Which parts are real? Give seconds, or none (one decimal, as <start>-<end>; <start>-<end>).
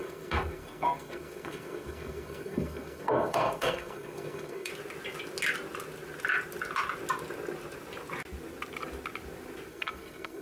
4.7-9.7